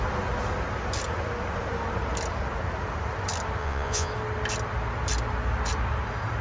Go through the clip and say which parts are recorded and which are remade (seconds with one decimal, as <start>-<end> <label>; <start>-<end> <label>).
0.0-3.6 recorded; 3.6-4.1 remade; 4.1-6.4 recorded